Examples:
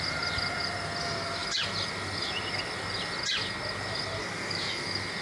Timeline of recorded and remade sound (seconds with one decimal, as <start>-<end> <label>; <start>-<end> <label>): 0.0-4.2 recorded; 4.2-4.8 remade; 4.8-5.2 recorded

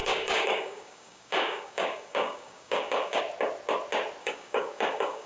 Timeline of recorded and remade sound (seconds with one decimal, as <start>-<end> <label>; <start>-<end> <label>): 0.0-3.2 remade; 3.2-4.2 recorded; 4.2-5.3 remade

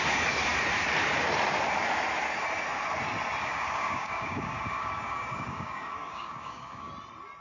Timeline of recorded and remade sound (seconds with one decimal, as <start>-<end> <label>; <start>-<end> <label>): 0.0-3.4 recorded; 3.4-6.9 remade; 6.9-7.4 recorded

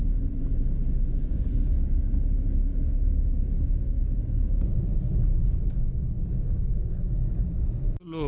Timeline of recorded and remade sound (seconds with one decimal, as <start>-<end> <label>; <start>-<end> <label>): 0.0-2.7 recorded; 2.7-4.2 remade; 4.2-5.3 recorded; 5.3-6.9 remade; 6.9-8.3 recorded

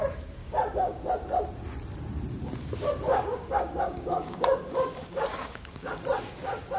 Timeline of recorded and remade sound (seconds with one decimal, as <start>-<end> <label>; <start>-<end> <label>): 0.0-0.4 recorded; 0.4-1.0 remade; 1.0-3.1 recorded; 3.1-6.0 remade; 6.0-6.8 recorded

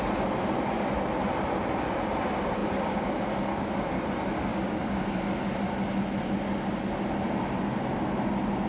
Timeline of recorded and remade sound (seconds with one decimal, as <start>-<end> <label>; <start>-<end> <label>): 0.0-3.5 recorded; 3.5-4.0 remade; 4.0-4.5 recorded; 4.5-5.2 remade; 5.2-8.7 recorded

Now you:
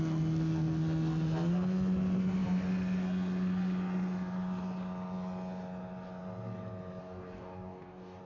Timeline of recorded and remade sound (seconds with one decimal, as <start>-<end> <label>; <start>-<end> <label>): 0.0-7.0 recorded; 7.0-8.2 remade

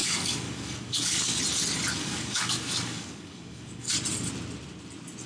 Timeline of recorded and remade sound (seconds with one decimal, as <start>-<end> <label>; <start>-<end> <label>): 0.0-1.4 remade; 1.4-2.0 recorded; 2.0-3.9 remade; 3.9-5.3 recorded